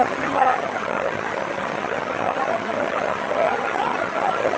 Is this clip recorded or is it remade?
remade